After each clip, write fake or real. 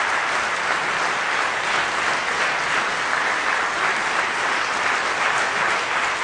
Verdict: real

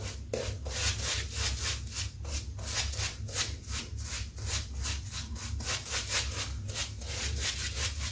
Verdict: real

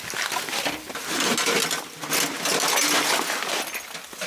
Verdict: real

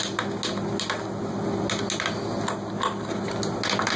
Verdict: real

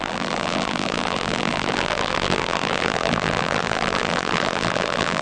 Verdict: fake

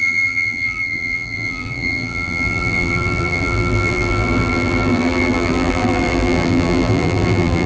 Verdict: fake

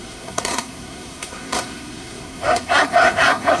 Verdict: fake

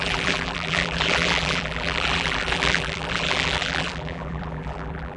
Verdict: fake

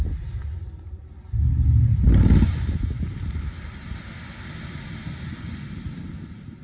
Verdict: real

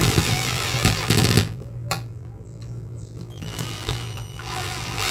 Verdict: fake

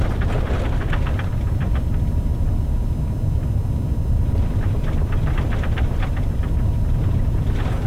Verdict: real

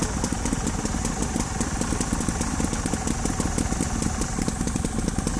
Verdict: real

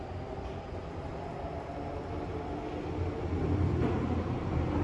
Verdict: real